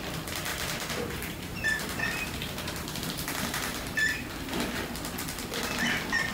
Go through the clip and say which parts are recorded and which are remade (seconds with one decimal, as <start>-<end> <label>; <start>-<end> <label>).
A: 0.0-0.5 recorded; 0.5-4.3 remade; 4.3-6.3 recorded